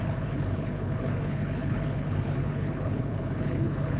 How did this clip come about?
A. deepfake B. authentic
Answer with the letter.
A